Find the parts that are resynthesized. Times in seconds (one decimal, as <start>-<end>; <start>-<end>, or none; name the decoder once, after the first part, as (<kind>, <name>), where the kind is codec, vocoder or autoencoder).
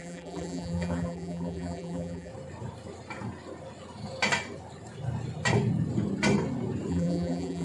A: 0.0-2.3 (vocoder, BigVGAN v2); 6.9-7.6